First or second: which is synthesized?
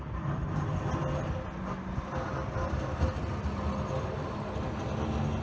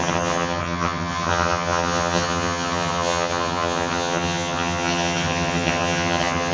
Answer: second